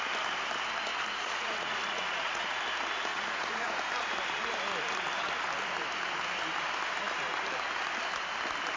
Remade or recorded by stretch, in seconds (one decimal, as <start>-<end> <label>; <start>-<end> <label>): 0.0-0.9 recorded; 0.9-2.6 remade; 2.6-3.1 recorded; 3.1-3.7 remade; 3.7-8.8 recorded